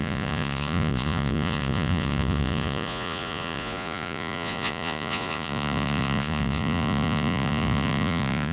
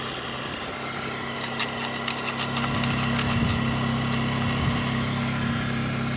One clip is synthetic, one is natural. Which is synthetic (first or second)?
first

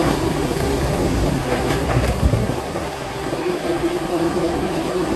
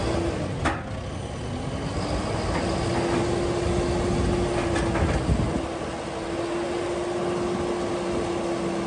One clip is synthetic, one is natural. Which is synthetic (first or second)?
first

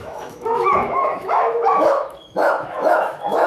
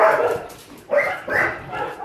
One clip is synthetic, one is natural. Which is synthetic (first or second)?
first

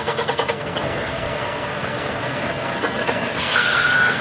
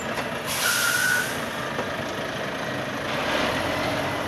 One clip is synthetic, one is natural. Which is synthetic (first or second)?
first